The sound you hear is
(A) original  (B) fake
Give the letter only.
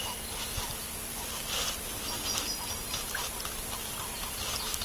A